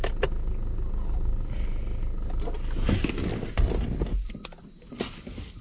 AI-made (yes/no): no